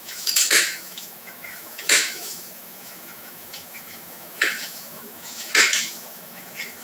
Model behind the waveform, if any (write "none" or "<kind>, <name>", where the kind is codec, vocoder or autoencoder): autoencoder, DAC-VAE